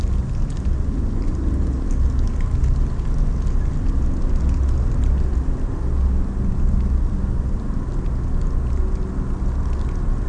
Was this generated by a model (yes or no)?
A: no